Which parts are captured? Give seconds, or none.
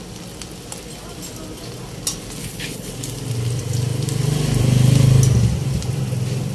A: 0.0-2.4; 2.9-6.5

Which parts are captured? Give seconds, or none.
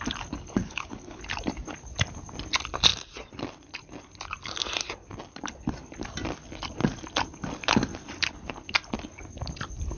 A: 0.0-0.6; 1.2-10.0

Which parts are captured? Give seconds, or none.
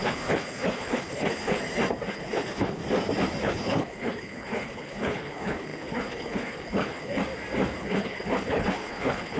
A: 1.6-2.1; 2.8-3.4; 7.2-7.8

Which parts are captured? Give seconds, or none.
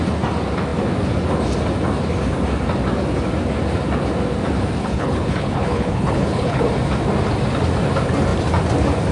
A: 0.0-4.8; 6.6-9.1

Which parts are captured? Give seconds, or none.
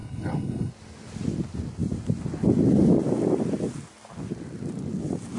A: 0.7-5.4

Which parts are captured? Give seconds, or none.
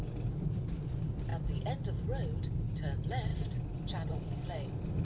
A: 0.0-5.0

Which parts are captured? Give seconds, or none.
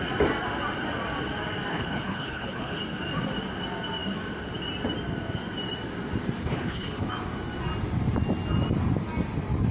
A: 0.0-1.7; 2.8-6.4; 7.1-9.7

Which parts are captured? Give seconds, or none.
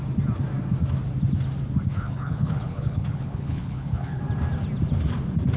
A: 0.0-1.9; 4.2-5.6